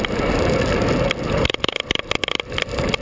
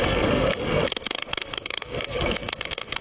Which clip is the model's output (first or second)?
second